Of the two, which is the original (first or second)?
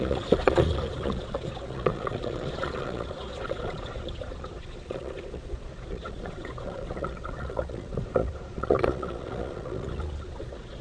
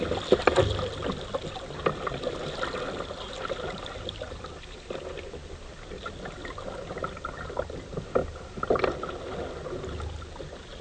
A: second